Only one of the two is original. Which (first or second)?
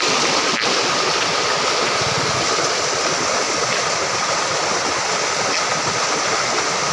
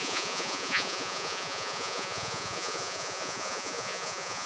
first